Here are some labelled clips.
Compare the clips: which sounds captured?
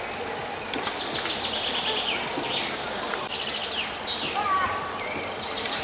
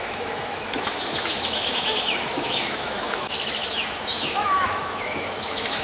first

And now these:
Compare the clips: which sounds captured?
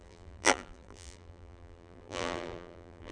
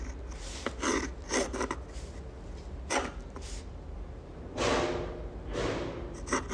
second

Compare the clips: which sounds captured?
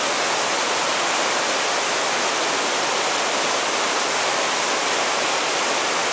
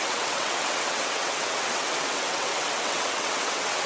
first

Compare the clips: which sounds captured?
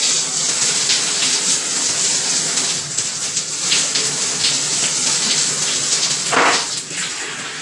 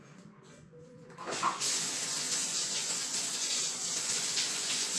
first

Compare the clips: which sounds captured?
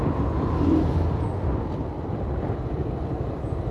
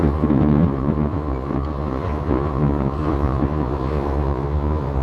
first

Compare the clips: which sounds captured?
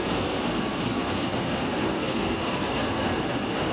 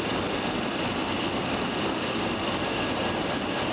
second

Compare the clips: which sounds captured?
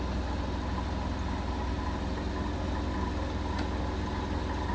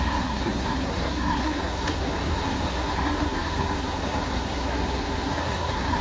first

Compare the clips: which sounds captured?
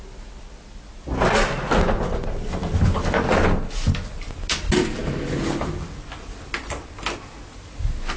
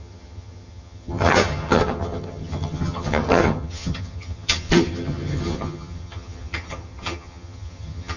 first